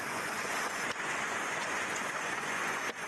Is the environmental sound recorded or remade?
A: remade